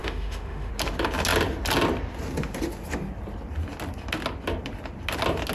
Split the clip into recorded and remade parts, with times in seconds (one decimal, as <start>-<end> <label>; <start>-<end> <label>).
0.0-0.7 remade; 0.7-5.5 recorded